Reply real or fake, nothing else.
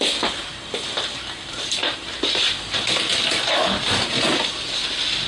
real